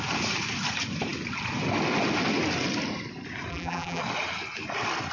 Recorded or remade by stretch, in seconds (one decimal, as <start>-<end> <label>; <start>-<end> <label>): 0.0-3.5 recorded; 3.5-4.0 remade; 4.0-5.1 recorded